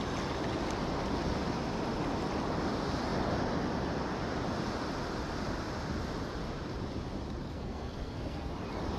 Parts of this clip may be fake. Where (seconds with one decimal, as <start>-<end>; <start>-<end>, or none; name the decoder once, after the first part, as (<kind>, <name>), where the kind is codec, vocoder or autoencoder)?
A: 7.4-8.5 (codec, SNAC)